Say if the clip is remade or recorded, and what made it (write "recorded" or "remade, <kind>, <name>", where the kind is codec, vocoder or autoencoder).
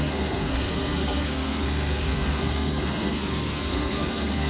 remade, codec, SNAC